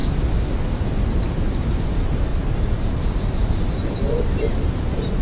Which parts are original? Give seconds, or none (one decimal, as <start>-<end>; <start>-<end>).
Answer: 0.0-1.3; 2.3-4.7